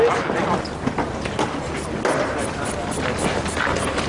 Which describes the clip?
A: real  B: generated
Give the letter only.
A